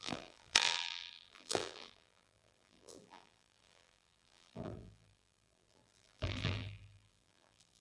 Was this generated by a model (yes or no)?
yes